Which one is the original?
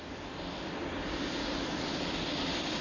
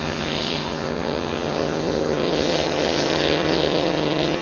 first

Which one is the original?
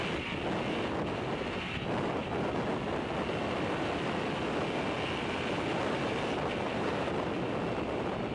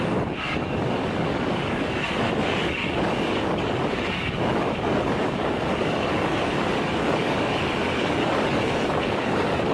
first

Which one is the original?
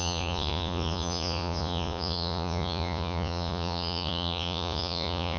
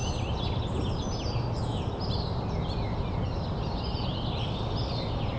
second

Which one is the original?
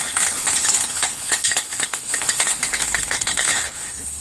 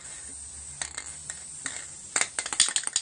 second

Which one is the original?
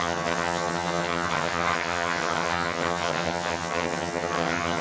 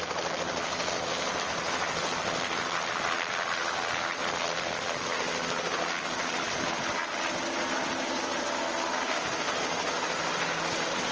second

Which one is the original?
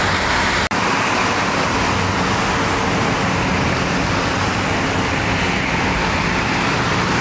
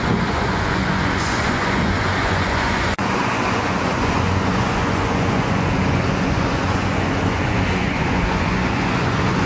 first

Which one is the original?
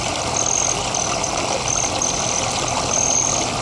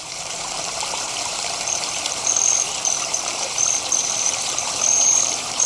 first